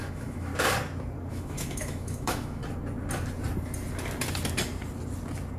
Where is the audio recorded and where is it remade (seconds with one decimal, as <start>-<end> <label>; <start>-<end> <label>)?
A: 0.0-0.5 remade; 0.5-1.3 recorded; 1.3-2.6 remade; 2.6-5.6 recorded